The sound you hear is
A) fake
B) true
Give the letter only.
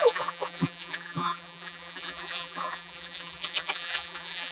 A